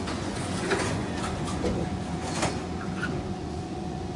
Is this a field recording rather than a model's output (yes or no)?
no